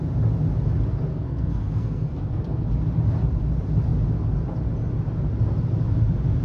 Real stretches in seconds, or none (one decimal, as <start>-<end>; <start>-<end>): 0.0-1.1; 2.7-6.4